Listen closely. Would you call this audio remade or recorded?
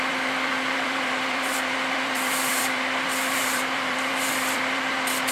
remade